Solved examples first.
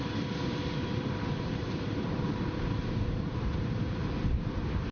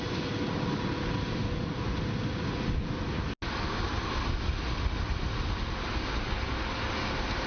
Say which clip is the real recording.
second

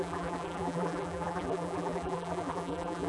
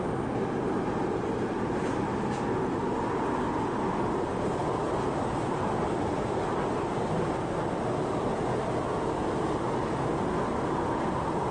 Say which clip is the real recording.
second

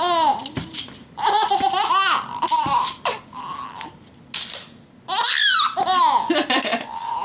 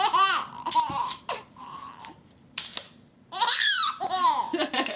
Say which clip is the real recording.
first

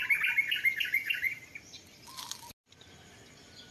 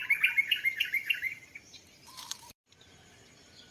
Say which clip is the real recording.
first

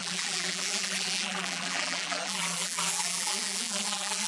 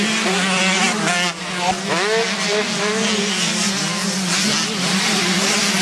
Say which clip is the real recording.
second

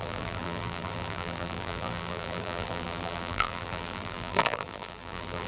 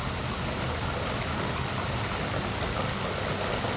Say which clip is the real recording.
second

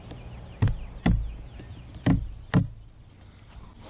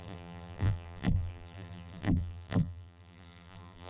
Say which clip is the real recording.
first